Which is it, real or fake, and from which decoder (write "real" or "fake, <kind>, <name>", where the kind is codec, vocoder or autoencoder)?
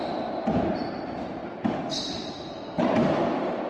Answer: real